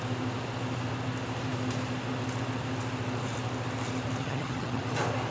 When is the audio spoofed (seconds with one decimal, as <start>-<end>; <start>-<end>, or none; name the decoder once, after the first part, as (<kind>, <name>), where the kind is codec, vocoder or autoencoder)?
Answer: 4.2-4.8 (vocoder, HiFi-GAN)